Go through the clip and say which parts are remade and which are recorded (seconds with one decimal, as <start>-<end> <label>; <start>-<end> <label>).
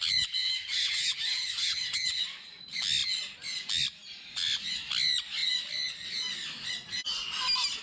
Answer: 0.0-0.4 recorded; 0.4-2.2 remade; 2.2-7.8 recorded